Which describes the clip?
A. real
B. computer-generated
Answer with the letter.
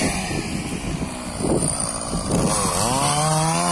A